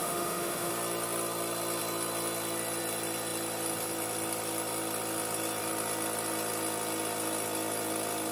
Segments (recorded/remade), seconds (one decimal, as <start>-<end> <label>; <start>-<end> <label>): 0.0-0.7 remade; 0.7-8.3 recorded